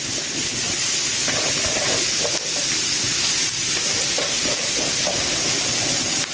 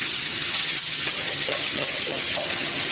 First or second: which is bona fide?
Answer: first